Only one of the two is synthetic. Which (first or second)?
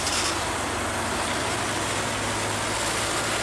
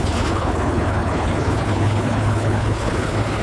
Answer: second